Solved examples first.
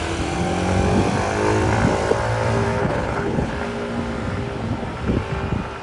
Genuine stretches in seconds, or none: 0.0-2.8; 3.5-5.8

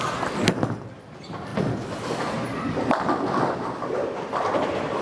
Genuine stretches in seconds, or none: 0.0-5.0

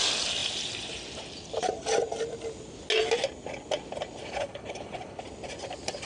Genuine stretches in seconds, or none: 0.0-4.2; 5.2-6.1

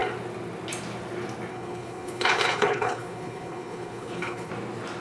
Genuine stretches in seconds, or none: 0.0-1.5; 4.5-5.0

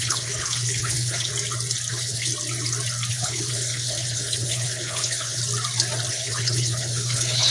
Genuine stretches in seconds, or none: 1.3-1.9; 2.3-3.1; 5.4-6.1

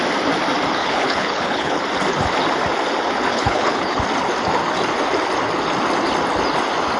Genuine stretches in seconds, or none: 0.0-0.8; 1.8-3.3; 4.0-7.0

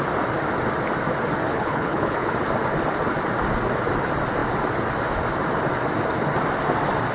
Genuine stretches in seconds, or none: 0.0-1.5; 2.3-7.1